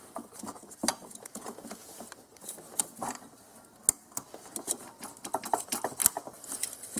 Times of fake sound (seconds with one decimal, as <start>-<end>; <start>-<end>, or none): 0.9-2.0